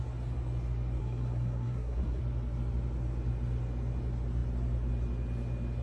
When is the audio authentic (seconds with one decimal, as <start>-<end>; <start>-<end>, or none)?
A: 0.0-1.0; 2.2-5.8